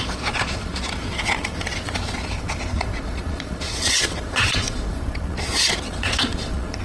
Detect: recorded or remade remade